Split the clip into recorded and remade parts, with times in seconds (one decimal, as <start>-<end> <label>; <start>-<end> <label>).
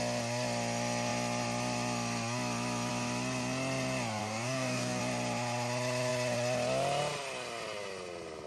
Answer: 0.0-4.2 recorded; 4.2-5.0 remade; 5.0-8.5 recorded